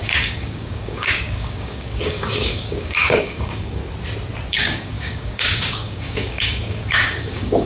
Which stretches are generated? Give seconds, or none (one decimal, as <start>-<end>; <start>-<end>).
0.0-3.8; 4.5-7.7